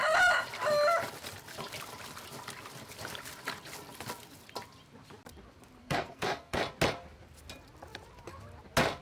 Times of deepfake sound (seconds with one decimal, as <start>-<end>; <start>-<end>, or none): 5.8-6.6

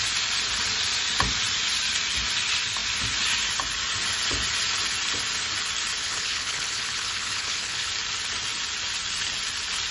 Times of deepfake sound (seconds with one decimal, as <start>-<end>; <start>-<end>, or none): 6.0-7.9